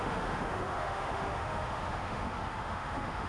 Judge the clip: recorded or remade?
remade